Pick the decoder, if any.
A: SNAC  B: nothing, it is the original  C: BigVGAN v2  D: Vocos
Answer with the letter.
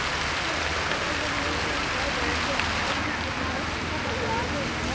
B